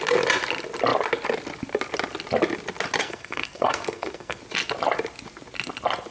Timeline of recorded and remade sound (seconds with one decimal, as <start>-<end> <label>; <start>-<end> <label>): 0.0-3.0 recorded; 3.0-4.4 remade; 4.4-6.1 recorded